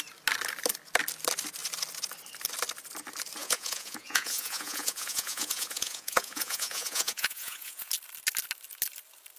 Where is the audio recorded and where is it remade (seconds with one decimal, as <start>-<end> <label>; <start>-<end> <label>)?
0.0-3.4 recorded; 3.4-7.9 remade; 7.9-9.4 recorded